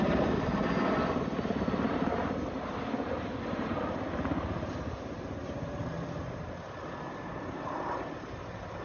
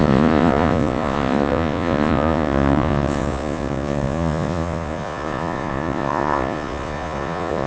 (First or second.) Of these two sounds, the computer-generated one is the second